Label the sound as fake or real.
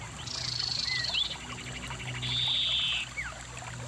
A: real